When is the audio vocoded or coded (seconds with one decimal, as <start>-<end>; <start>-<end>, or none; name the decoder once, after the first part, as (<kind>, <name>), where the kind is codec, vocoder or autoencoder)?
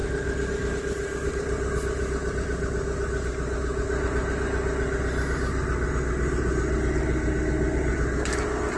none